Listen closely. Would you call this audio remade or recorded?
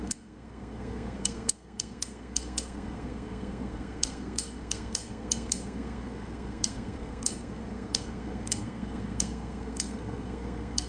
remade